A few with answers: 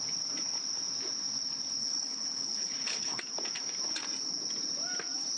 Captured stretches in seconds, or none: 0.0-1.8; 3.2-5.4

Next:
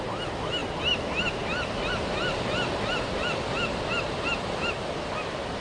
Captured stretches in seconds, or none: 0.0-5.6

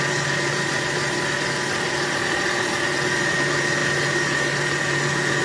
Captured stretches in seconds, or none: 0.0-5.4